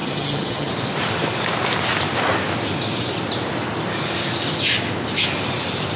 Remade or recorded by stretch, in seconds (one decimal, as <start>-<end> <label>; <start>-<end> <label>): 0.0-0.7 remade; 0.7-6.0 recorded